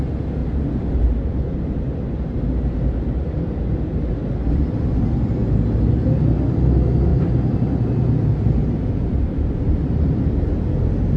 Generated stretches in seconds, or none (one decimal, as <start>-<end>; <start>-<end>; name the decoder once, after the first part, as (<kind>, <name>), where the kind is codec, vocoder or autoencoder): 0.4-0.9 (vocoder, BigVGAN v2); 1.3-4.1; 7.1-9.9